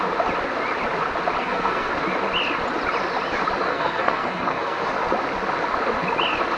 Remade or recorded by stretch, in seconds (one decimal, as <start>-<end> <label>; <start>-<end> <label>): 0.0-1.4 recorded; 1.4-1.9 remade; 1.9-3.7 recorded; 3.7-4.9 remade; 4.9-6.6 recorded